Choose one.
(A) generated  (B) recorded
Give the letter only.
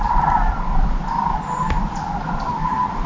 B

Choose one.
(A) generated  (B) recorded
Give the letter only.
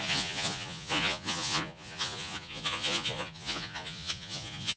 A